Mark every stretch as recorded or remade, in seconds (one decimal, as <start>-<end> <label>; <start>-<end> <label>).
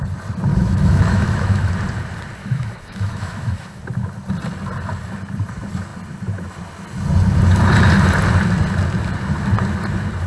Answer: 0.0-0.5 recorded; 0.5-1.7 remade; 1.7-2.4 recorded; 2.4-3.8 remade; 3.8-10.3 recorded